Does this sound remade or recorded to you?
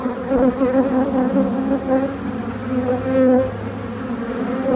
recorded